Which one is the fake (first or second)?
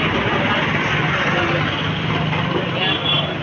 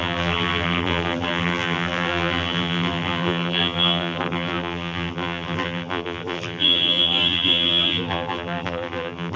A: second